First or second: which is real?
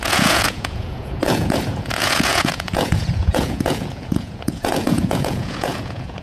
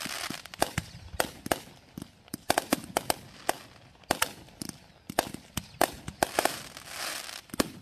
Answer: second